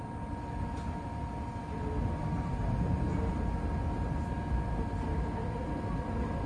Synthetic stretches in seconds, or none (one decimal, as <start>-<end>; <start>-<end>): none